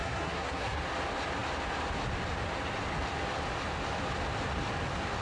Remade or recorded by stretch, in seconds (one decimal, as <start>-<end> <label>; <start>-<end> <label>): 0.0-0.8 remade; 0.8-5.2 recorded